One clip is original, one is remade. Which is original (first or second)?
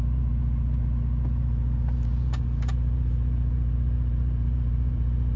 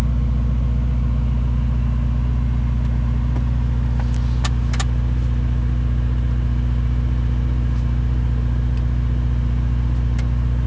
second